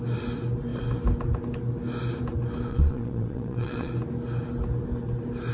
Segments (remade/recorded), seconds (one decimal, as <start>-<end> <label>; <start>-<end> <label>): 0.0-2.7 recorded; 2.7-3.9 remade; 3.9-5.5 recorded